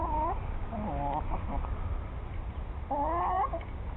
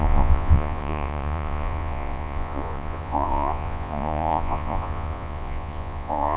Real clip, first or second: first